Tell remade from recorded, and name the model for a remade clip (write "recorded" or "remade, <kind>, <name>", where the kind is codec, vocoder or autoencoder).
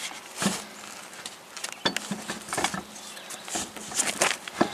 recorded